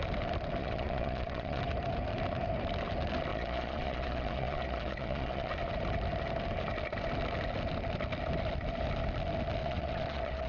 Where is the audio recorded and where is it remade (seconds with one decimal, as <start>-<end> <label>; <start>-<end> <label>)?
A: 0.0-0.6 recorded; 0.6-1.6 remade; 1.6-3.3 recorded; 3.3-5.5 remade; 5.5-9.6 recorded; 9.6-10.5 remade